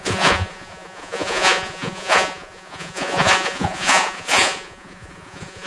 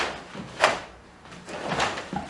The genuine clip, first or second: second